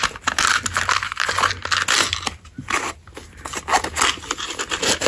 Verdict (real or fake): real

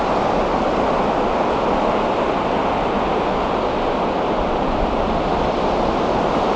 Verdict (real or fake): real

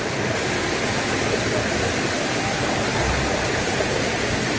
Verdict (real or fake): real